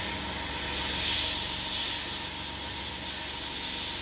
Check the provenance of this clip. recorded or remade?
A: recorded